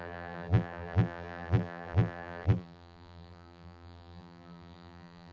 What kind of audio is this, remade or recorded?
remade